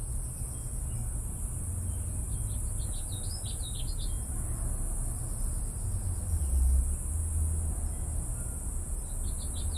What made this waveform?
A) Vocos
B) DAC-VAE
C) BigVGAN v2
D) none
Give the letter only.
D